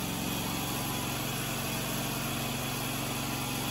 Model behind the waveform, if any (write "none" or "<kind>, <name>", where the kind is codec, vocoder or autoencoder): none